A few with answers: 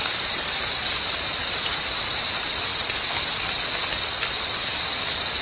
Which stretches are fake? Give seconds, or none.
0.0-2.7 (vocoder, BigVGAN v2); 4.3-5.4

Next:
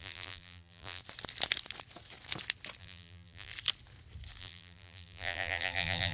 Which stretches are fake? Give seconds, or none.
0.0-1.0 (vocoder, BigVGAN v2); 2.8-3.5; 4.4-6.1

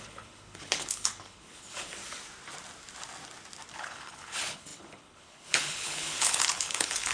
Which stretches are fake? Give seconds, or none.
0.0-2.0 (codec, HILCodec); 3.8-7.1